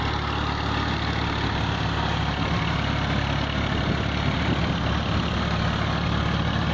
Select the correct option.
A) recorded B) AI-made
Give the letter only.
A